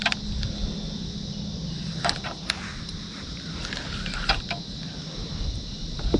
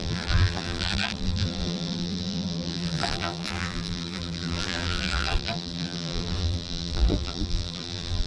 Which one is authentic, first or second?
first